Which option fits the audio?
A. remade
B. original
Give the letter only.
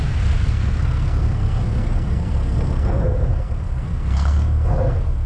A